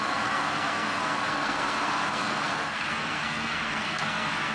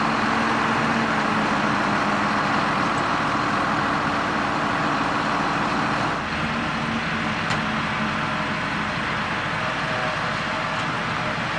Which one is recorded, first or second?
second